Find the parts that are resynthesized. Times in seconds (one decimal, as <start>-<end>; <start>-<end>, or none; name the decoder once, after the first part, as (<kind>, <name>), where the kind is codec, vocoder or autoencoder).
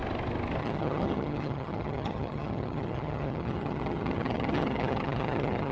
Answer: 0.6-5.7 (vocoder, HiFi-GAN)